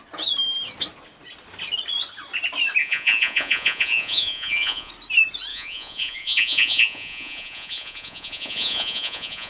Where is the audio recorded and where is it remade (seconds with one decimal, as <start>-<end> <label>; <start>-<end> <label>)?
0.0-2.8 recorded; 2.8-4.9 remade; 4.9-5.5 recorded; 5.5-9.5 remade